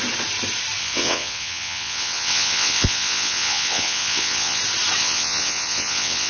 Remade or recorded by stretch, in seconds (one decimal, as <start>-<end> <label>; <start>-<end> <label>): 0.0-0.8 recorded; 0.8-4.6 remade; 4.6-5.0 recorded; 5.0-6.3 remade